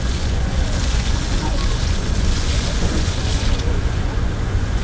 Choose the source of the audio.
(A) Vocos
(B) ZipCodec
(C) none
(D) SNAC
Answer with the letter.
A